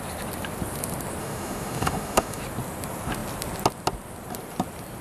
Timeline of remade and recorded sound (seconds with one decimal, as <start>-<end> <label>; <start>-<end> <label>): 0.0-1.2 recorded; 1.2-2.4 remade; 2.4-5.0 recorded